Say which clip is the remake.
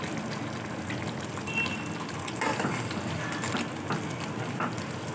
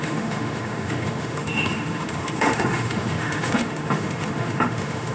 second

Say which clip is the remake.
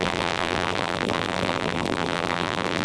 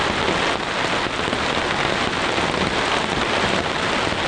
first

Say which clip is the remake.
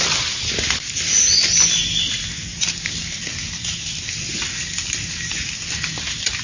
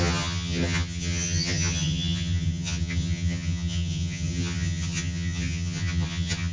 second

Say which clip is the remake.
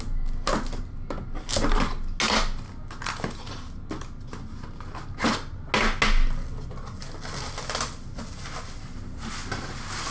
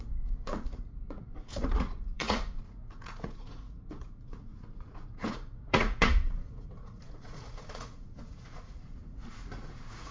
second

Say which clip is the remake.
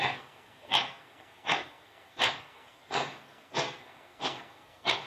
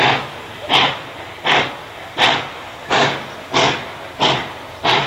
first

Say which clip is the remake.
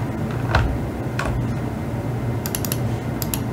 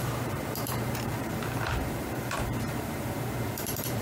second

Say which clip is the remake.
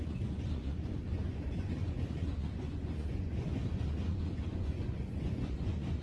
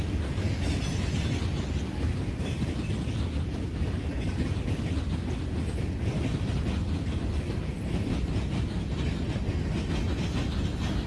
first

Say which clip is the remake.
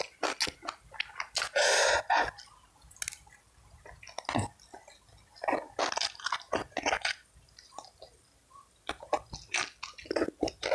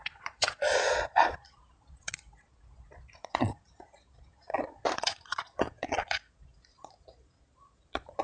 second